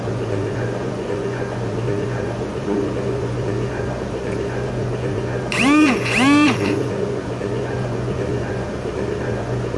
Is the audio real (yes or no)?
no